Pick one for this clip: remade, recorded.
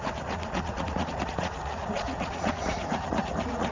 remade